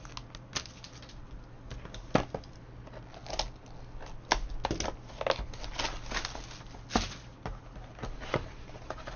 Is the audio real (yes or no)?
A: yes